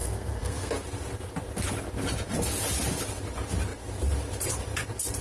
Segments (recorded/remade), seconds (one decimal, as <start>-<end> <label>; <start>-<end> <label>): 0.0-0.7 remade; 0.7-5.2 recorded